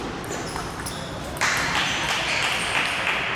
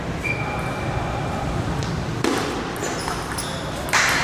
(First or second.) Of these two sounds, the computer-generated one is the first